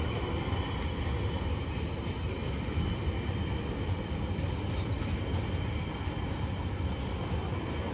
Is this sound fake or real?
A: real